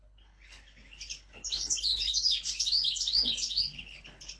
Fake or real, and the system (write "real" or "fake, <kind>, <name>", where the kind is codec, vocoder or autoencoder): fake, codec, HILCodec